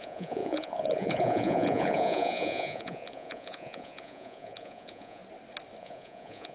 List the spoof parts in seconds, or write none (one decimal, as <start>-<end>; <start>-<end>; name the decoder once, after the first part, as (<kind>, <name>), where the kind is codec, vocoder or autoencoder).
0.0-5.2 (vocoder, Vocos); 5.8-6.5